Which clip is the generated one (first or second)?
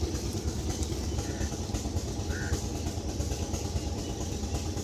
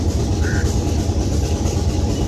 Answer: second